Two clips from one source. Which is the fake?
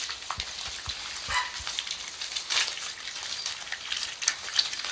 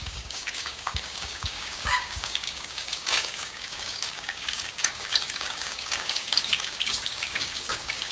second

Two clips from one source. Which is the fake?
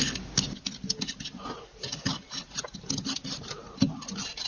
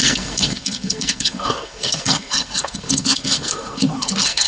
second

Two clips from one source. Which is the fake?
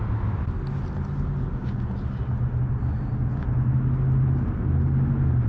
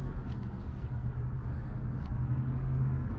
second